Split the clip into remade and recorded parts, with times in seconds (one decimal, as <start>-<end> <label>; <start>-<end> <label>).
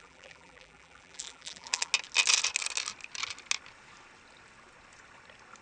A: 0.0-1.9 remade; 1.9-5.6 recorded